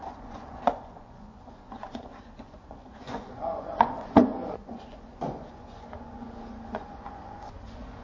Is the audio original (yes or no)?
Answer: no